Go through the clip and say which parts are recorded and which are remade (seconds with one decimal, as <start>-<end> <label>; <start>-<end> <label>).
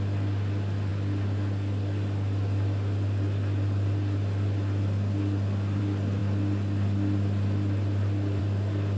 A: 0.0-9.0 recorded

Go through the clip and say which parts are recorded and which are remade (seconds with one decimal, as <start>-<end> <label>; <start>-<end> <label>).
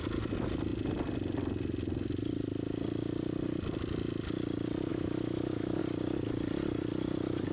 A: 0.0-4.9 recorded; 4.9-5.8 remade; 5.8-7.5 recorded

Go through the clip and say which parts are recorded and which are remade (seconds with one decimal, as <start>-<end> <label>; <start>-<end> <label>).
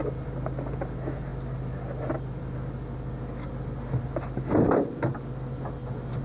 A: 0.0-6.2 recorded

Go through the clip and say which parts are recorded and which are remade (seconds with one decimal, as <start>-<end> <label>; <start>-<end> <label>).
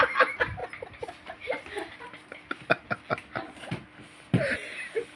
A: 0.0-5.2 recorded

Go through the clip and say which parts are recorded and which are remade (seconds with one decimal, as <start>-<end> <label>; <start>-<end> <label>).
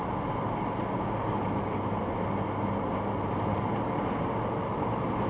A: 0.0-5.3 recorded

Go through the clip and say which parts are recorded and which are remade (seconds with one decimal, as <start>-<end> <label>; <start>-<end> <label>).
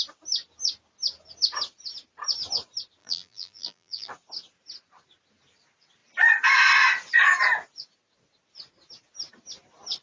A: 0.0-3.0 recorded; 3.0-4.1 remade; 4.1-10.0 recorded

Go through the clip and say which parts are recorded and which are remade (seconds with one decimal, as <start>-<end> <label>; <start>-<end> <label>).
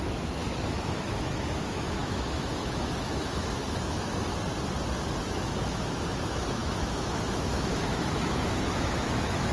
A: 0.0-4.3 remade; 4.3-5.2 recorded; 5.2-9.5 remade